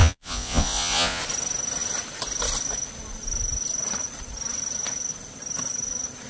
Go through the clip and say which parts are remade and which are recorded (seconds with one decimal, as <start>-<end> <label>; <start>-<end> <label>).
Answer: 0.0-1.2 remade; 1.2-6.3 recorded

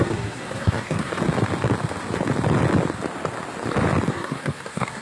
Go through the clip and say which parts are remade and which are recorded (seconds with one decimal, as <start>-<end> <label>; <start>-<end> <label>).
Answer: 0.0-1.1 remade; 1.1-4.1 recorded; 4.1-5.0 remade